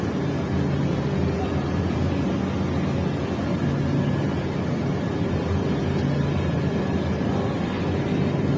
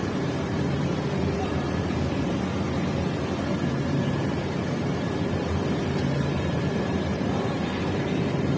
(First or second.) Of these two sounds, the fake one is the second